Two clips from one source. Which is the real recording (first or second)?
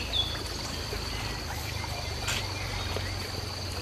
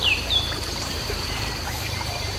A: first